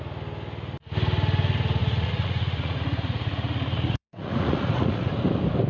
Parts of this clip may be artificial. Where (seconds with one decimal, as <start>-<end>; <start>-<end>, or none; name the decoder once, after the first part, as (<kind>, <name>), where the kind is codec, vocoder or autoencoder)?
1.8-5.1 (vocoder, Vocos)